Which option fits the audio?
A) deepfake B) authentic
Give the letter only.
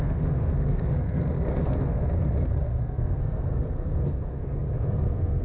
A